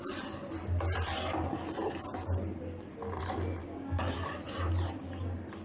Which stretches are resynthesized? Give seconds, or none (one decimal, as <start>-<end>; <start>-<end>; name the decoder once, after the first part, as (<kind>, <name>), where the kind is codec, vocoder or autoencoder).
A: 3.6-4.2 (codec, DAC)